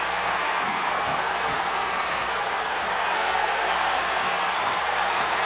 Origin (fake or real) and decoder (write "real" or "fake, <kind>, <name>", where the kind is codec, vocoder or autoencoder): fake, codec, SNAC